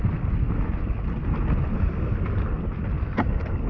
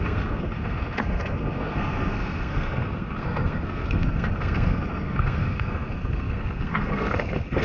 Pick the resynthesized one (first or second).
second